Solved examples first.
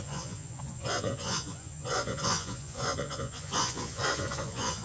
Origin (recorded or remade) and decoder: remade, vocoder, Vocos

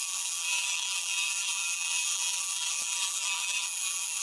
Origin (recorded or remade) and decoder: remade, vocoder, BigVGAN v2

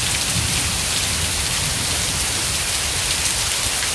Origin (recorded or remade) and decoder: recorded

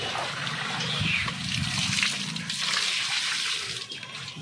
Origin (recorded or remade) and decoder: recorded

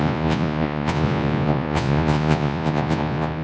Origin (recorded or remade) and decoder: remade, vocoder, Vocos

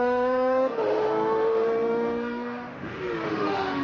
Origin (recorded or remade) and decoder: remade, autoencoder, DAC-VAE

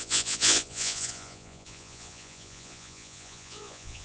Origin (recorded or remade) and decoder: remade, vocoder, Vocos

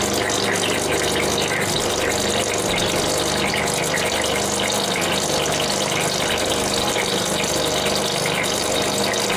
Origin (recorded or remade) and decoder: recorded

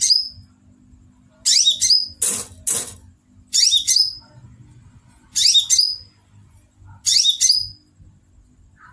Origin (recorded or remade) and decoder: recorded